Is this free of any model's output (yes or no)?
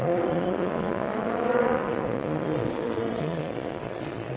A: no